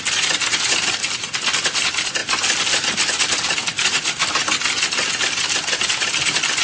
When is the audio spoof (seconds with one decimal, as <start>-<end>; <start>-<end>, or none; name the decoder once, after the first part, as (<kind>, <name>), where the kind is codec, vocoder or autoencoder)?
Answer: none